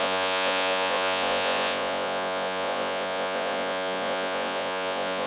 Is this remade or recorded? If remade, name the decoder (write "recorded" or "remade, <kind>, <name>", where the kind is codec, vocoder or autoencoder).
remade, vocoder, Vocos